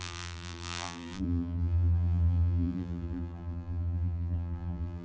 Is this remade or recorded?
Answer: remade